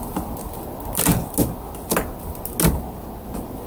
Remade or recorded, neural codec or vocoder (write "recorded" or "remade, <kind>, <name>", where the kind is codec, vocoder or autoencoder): recorded